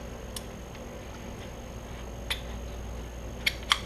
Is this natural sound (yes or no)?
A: yes